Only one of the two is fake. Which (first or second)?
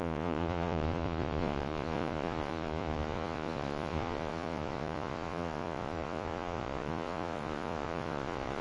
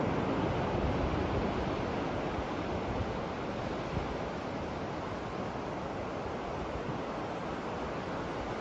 first